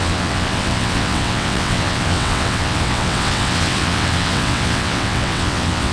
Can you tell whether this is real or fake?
fake